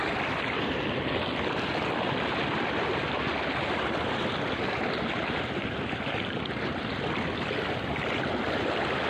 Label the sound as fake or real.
real